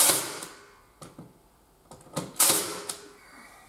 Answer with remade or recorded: recorded